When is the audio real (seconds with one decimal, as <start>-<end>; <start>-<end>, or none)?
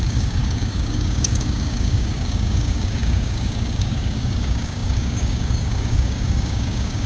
none